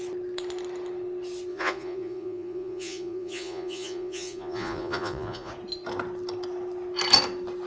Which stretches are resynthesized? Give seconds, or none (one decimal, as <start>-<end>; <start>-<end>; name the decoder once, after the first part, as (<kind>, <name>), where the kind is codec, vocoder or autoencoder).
1.5-5.5 (vocoder, Vocos)